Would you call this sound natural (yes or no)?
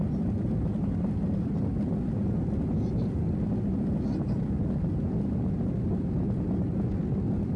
yes